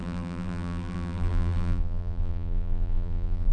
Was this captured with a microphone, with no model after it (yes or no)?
no